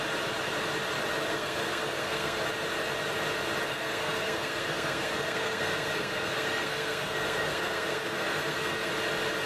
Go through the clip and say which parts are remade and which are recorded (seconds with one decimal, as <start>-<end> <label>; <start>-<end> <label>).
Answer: 0.0-1.3 recorded; 1.3-2.4 remade; 2.4-3.7 recorded; 3.7-8.9 remade; 8.9-9.5 recorded

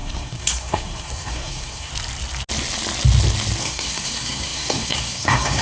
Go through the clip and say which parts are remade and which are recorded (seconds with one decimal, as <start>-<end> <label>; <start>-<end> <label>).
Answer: 0.0-1.9 remade; 1.9-3.6 recorded; 3.6-5.6 remade

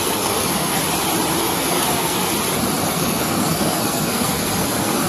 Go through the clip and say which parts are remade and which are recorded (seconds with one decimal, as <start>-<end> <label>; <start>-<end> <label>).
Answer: 0.0-0.8 remade; 0.8-1.4 recorded; 1.4-2.2 remade; 2.2-2.9 recorded; 2.9-5.1 remade

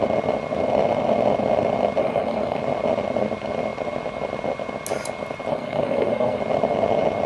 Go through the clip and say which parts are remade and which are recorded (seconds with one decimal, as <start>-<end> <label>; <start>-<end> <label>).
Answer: 0.0-2.0 recorded; 2.0-2.6 remade; 2.6-5.5 recorded; 5.5-6.4 remade; 6.4-7.3 recorded

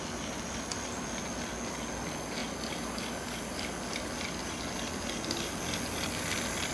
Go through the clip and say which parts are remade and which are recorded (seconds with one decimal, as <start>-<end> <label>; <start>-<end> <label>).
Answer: 0.0-6.7 recorded

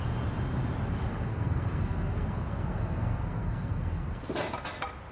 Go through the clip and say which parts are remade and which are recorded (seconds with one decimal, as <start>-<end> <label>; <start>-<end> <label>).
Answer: 0.0-1.1 recorded; 1.1-4.2 remade; 4.2-5.1 recorded